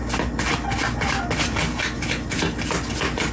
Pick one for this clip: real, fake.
real